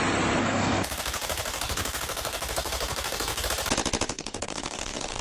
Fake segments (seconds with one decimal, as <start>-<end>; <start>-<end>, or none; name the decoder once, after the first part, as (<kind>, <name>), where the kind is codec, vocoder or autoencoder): 0.4-3.5 (codec, DAC); 4.1-5.2